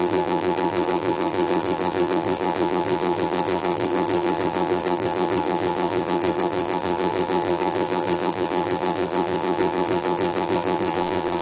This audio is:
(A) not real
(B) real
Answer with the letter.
A